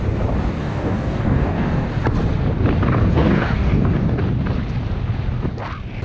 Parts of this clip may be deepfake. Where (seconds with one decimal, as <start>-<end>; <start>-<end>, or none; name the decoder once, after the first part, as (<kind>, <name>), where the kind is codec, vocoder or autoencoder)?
0.6-1.9 (codec, DAC); 3.1-4.2